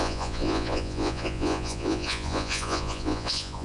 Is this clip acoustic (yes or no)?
no